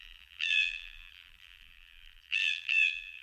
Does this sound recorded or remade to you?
remade